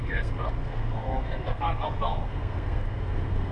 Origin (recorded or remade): remade